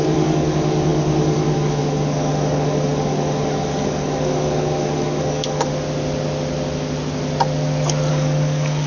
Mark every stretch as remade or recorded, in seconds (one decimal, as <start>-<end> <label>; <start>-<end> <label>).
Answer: 0.0-5.7 remade; 5.7-8.1 recorded; 8.1-8.9 remade